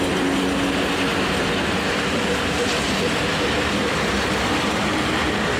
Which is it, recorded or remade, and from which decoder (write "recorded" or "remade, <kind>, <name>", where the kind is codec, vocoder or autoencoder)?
recorded